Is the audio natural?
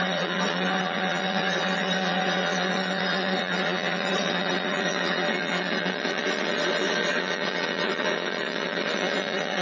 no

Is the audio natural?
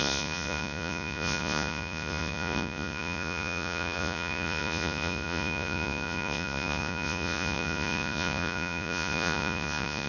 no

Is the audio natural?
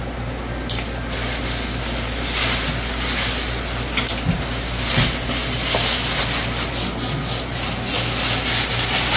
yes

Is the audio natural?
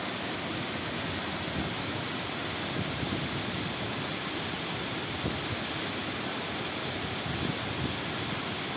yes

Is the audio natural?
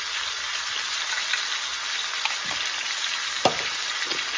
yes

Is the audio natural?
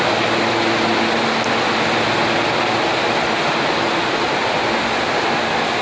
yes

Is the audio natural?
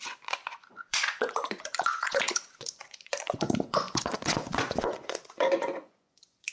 no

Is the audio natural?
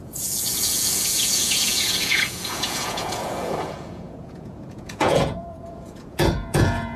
no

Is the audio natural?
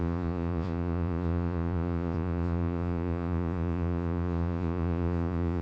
no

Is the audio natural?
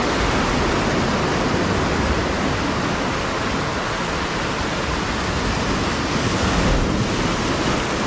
yes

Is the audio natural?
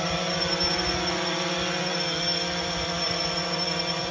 yes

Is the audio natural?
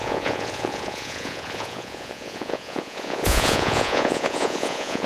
no